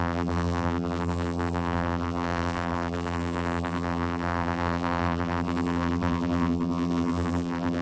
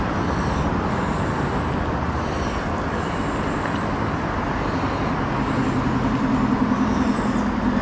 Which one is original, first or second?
second